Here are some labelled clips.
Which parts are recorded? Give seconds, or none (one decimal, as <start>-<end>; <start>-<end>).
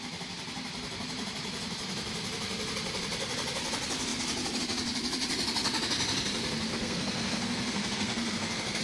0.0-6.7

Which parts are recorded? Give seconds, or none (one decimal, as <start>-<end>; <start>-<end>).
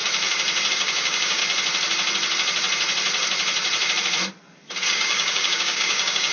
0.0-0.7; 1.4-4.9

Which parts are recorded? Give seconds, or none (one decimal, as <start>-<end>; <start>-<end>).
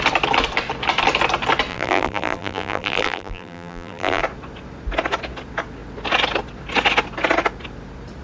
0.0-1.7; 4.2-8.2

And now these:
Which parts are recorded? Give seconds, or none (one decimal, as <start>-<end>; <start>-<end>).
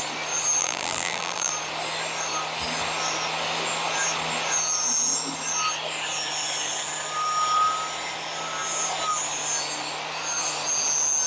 0.0-0.6; 1.5-11.3